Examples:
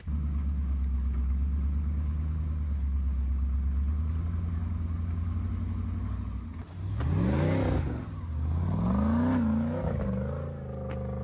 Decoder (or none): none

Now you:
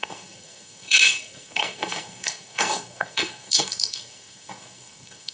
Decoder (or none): codec, SNAC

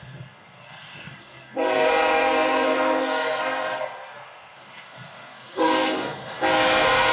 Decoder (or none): codec, SNAC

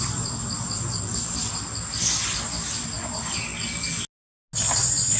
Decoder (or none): none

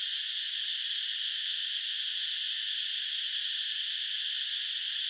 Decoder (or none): none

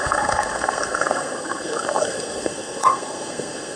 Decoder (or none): codec, SNAC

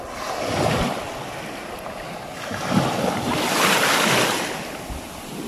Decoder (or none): none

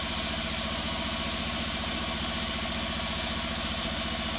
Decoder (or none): none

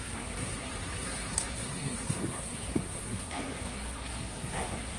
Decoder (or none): codec, SNAC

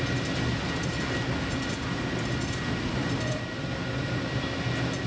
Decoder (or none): none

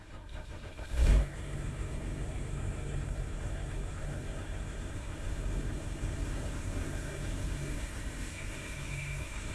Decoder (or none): codec, SNAC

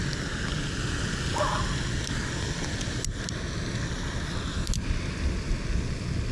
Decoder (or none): none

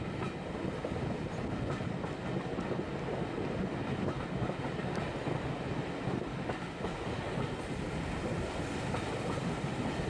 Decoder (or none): none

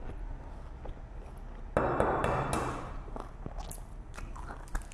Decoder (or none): none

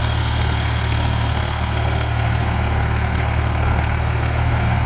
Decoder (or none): codec, SNAC